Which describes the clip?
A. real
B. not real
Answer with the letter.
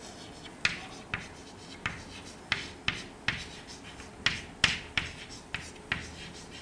A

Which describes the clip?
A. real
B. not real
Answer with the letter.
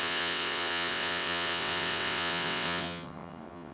B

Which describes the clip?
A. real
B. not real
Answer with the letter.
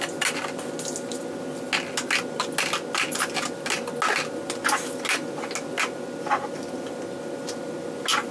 A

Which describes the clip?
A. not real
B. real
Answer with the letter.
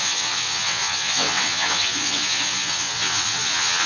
A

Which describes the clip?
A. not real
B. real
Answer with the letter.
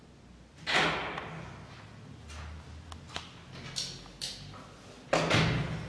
B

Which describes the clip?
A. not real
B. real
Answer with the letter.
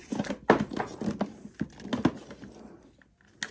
B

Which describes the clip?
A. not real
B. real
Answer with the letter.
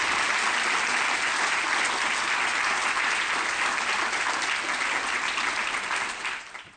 B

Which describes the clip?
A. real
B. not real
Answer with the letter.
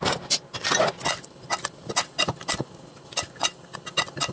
A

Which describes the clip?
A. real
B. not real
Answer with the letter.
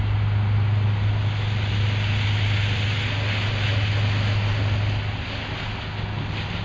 A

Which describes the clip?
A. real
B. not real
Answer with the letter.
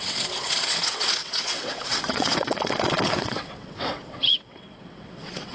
B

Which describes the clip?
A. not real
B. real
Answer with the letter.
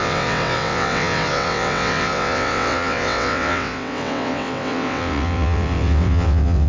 A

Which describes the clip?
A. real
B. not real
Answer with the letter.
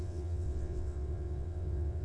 B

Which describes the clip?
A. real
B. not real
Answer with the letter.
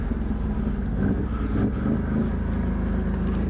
A